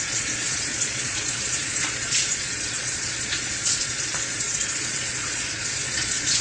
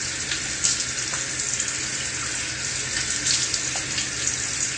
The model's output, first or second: first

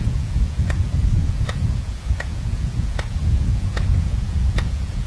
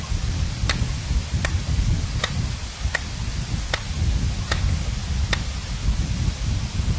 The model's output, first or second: first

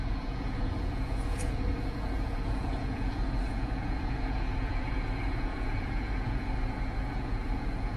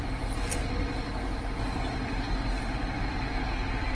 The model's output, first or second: first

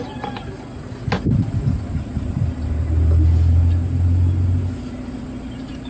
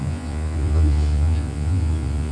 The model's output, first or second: second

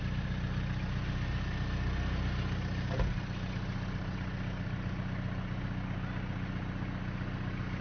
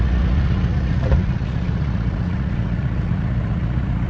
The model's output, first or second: second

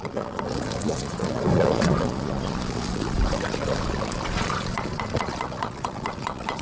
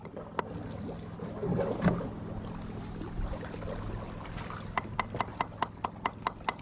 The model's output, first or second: first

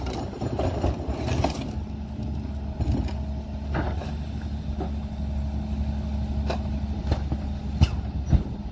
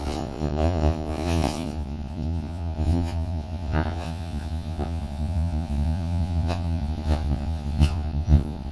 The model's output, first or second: second